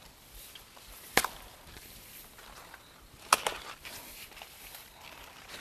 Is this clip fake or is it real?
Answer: real